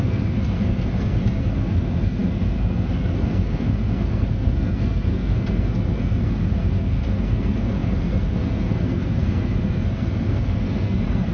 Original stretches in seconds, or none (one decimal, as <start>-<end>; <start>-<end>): none